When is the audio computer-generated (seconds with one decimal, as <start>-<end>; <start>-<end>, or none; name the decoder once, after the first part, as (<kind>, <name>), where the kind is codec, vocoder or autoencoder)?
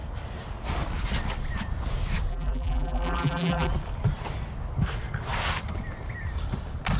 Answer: 2.3-3.7 (vocoder, BigVGAN v2)